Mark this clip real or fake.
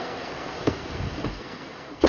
fake